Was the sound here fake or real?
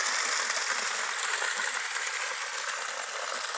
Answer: real